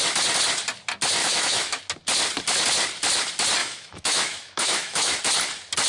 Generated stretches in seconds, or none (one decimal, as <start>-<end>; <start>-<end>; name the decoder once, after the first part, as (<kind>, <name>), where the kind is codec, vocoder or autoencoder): 1.2-1.8 (autoencoder, DAC-VAE); 3.6-5.2